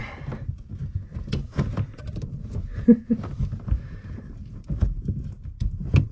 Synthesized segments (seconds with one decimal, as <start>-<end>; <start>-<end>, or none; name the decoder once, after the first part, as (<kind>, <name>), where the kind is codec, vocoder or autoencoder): none